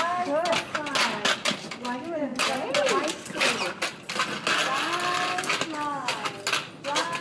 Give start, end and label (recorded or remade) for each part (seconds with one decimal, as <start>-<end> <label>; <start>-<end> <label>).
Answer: 0.0-7.2 recorded